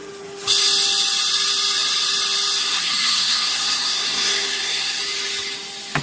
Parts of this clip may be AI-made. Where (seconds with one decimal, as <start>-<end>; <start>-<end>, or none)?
2.6-5.0